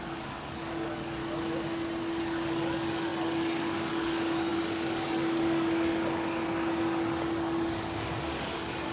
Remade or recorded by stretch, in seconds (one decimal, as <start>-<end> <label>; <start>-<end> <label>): 0.0-1.2 remade; 1.2-2.2 recorded; 2.2-8.9 remade

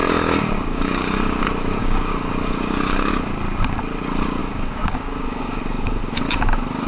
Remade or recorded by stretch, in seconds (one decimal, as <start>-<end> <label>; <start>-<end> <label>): 0.0-1.4 remade; 1.4-1.8 recorded; 1.8-3.1 remade; 3.1-4.4 recorded; 4.4-6.0 remade; 6.0-6.9 recorded

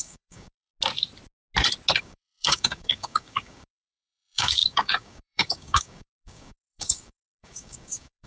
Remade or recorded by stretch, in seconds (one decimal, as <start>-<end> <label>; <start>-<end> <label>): 0.0-0.7 remade; 0.7-2.0 recorded; 2.0-8.3 remade

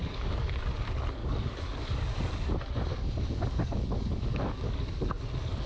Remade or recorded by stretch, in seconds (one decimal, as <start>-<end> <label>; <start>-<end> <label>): 0.0-0.6 remade; 0.6-1.2 recorded; 1.2-2.3 remade; 2.3-2.9 recorded; 2.9-5.1 remade; 5.1-5.7 recorded

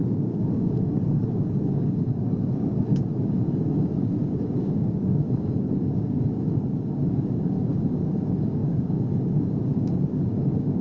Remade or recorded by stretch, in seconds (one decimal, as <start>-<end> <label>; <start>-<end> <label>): 0.0-10.8 remade

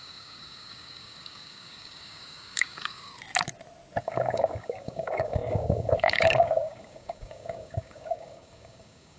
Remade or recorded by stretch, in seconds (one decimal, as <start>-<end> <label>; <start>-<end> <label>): 0.0-3.1 remade; 3.1-4.0 recorded; 4.0-9.2 remade

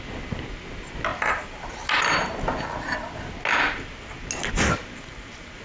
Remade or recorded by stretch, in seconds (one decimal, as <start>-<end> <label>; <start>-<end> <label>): 0.0-5.6 recorded